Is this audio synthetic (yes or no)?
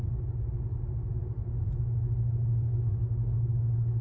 no